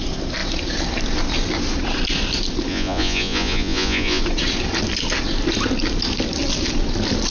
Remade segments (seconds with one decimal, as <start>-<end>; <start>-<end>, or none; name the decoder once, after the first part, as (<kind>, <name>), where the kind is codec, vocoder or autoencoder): 2.7-4.2 (vocoder, Vocos)